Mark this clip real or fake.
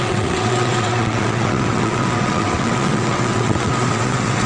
fake